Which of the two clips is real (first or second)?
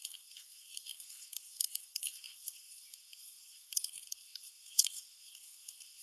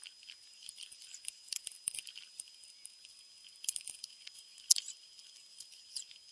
second